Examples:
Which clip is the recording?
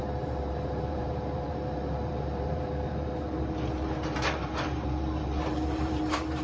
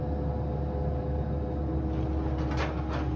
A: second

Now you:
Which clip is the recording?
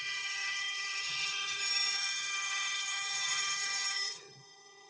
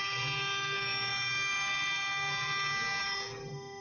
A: second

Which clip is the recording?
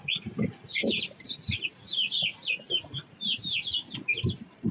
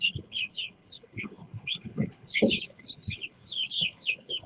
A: first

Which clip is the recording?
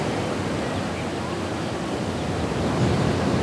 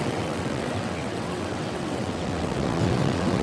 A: first